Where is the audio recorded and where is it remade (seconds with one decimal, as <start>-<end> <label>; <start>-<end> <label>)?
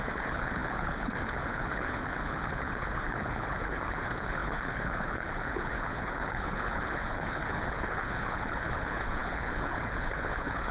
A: 0.0-10.7 remade